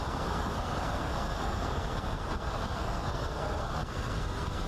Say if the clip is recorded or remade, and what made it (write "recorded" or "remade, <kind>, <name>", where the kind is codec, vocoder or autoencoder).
remade, codec, SNAC